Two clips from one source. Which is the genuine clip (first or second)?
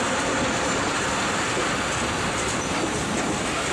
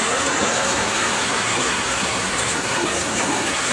first